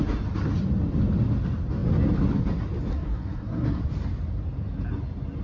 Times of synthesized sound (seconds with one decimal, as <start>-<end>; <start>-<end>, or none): 2.9-3.8